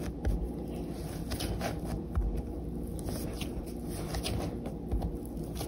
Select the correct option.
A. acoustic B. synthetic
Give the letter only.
A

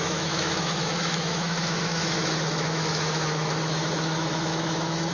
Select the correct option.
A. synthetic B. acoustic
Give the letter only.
A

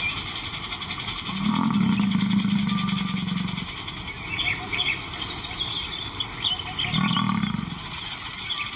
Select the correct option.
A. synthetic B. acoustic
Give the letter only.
B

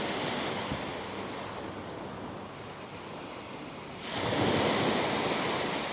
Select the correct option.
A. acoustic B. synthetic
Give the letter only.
A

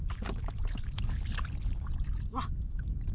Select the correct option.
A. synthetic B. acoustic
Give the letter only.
B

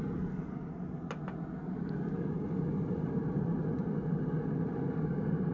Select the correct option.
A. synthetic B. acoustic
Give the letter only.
B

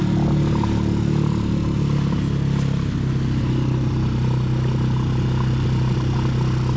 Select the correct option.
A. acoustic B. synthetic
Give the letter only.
A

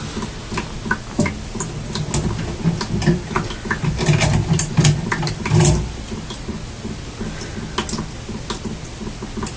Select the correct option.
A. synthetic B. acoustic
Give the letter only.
B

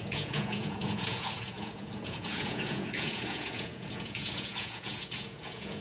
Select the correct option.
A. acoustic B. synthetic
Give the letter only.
B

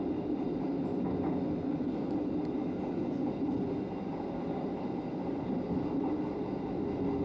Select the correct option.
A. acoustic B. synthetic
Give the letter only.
A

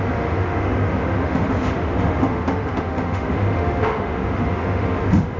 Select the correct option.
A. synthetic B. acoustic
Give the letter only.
A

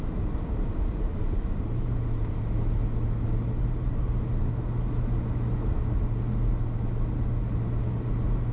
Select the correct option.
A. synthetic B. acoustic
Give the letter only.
B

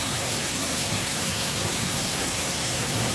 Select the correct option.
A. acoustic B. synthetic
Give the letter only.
B